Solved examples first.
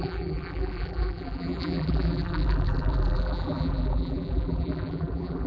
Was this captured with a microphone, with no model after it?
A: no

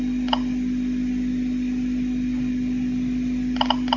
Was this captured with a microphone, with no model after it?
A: yes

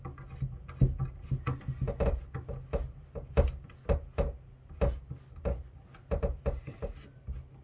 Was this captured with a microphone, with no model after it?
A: yes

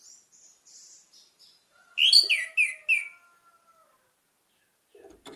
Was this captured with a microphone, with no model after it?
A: yes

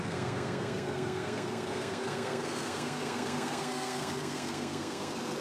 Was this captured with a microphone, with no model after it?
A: no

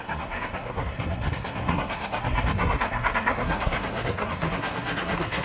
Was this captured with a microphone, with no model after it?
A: no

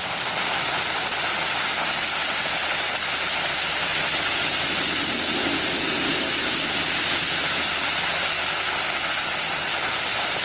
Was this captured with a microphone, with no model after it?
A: yes